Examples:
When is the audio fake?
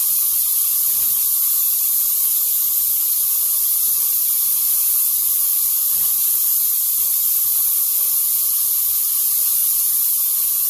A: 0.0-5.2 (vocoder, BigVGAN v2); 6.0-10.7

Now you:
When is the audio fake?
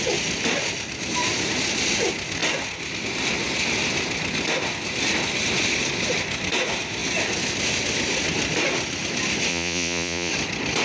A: 9.5-10.3 (vocoder, Vocos)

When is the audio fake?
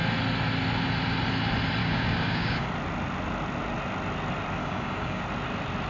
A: 1.8-2.7 (codec, DAC); 4.6-5.2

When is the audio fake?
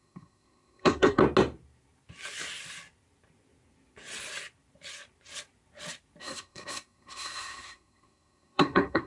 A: 0.0-1.2 (codec, SNAC); 6.2-9.1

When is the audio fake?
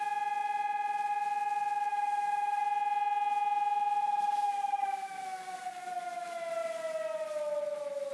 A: 1.9-2.6 (codec, SNAC); 4.0-5.8